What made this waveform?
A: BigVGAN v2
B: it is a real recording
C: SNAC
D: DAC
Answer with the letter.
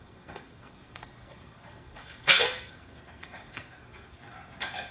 C